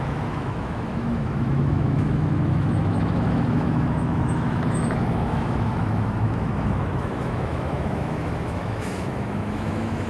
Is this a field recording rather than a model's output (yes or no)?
no